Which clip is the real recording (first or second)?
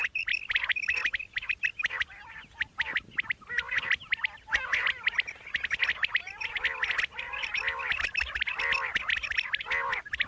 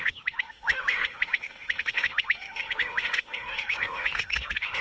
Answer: first